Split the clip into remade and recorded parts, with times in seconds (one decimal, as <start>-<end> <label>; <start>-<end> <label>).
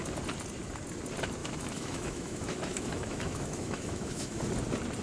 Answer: 0.0-1.4 recorded; 1.4-4.4 remade; 4.4-5.0 recorded